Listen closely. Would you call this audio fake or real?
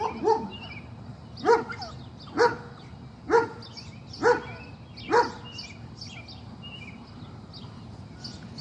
real